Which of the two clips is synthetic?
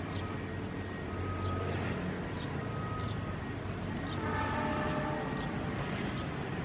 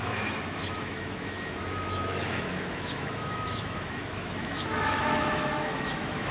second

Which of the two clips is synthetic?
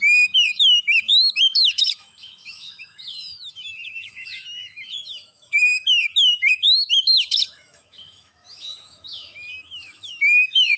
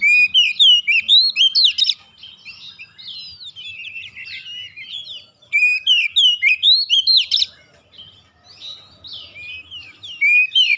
first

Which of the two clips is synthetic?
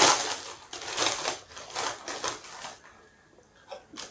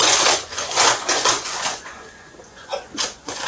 second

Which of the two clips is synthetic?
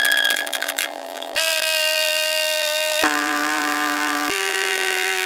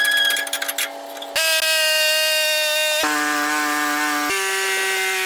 first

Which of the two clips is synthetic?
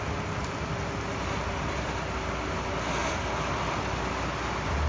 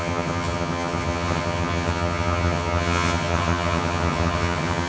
second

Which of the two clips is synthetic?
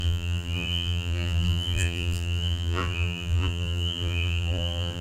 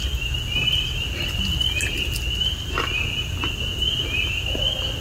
first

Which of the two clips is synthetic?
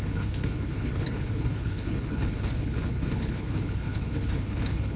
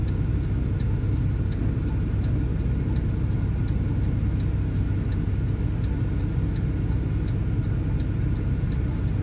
first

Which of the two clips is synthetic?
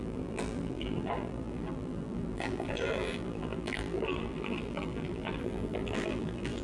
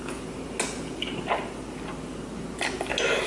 first